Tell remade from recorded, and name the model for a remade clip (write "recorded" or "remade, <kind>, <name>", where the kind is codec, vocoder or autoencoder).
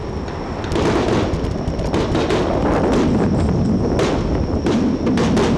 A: recorded